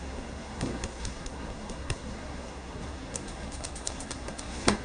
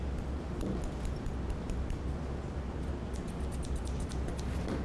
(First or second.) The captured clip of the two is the second